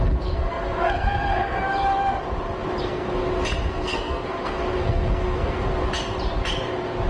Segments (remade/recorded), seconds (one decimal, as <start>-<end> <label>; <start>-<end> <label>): 0.0-1.6 remade; 1.6-2.8 recorded; 2.8-3.2 remade; 3.2-3.7 recorded; 3.7-5.7 remade; 5.7-7.1 recorded